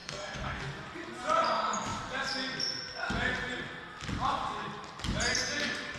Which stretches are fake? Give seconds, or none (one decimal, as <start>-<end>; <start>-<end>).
0.0-0.6